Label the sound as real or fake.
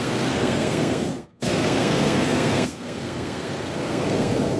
fake